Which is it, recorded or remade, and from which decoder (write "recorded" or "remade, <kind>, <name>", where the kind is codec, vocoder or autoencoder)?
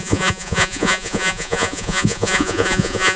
remade, vocoder, Vocos